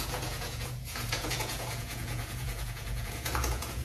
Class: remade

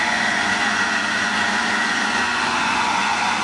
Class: remade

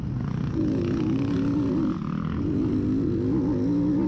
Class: recorded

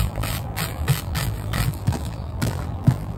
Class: remade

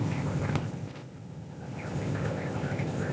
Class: remade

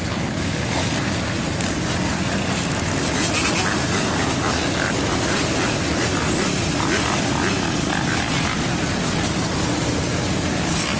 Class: recorded